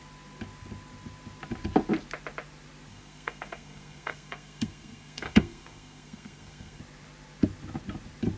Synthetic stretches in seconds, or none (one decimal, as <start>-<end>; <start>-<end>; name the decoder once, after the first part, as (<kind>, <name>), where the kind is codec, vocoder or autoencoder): 2.9-6.8 (codec, SNAC)